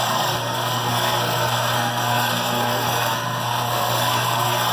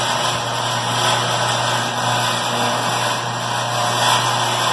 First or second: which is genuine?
second